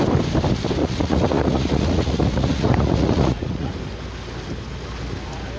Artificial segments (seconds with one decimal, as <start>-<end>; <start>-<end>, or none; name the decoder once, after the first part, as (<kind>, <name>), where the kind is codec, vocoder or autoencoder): 0.8-3.7 (vocoder, Vocos)